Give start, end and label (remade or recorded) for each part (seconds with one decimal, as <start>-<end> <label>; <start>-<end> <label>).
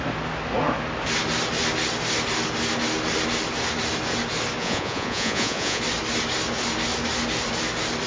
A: 0.0-4.6 recorded; 4.6-5.8 remade; 5.8-8.1 recorded